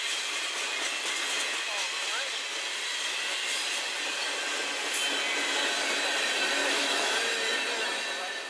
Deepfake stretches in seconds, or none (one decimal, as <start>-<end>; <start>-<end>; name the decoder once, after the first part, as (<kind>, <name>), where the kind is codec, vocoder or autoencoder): 6.6-7.2 (autoencoder, DAC-VAE)